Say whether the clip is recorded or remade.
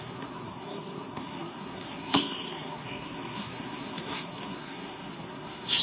remade